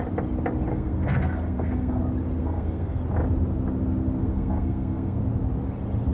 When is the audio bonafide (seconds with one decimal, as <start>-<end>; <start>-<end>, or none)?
0.0-0.7; 2.0-2.4; 3.0-4.2; 5.2-6.1